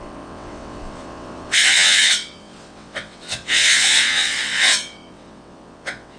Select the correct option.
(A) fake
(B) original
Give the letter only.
A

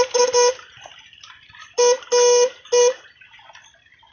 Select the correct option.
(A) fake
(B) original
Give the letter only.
B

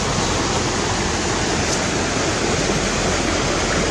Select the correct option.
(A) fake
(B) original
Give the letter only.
B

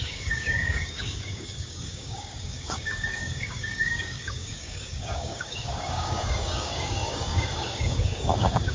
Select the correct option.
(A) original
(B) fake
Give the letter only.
B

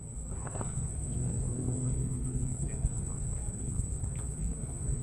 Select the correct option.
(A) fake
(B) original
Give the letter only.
A